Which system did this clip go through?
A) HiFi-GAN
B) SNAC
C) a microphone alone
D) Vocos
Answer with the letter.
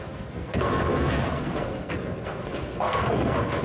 B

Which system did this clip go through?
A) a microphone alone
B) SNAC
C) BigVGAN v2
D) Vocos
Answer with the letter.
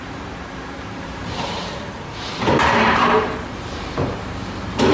C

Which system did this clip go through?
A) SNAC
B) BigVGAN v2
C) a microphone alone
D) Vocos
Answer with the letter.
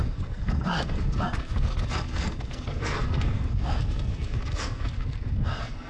A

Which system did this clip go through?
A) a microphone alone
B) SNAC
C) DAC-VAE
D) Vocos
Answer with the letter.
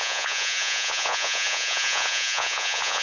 D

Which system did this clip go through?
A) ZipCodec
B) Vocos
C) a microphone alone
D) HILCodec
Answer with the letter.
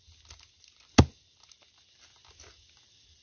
C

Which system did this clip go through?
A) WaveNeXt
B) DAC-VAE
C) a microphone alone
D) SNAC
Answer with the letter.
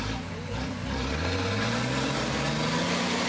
C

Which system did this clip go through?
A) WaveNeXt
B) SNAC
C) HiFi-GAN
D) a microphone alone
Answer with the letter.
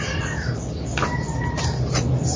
D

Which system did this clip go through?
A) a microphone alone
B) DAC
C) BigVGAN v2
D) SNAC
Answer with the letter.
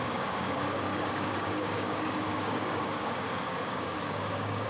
B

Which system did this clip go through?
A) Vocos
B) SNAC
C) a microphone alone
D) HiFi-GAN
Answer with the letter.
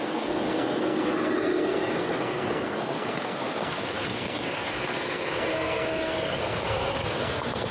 B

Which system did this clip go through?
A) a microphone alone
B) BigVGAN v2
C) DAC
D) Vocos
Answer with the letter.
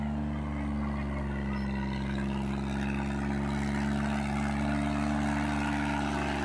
A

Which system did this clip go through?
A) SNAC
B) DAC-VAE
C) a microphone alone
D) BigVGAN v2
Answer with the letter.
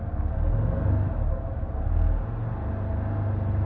C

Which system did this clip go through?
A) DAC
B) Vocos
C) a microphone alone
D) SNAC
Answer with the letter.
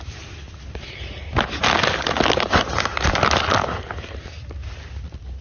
C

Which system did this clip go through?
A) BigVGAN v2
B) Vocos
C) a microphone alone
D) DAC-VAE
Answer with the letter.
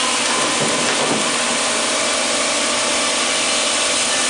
C